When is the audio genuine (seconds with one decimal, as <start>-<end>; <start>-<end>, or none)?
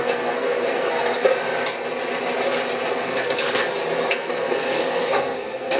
1.3-2.9; 3.6-4.1